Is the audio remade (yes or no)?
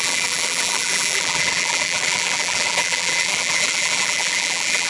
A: yes